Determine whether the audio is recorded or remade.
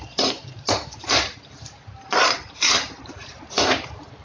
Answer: remade